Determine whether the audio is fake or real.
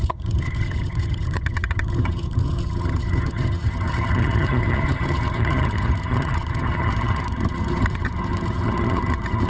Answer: fake